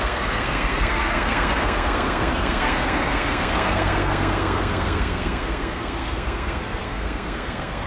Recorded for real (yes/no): no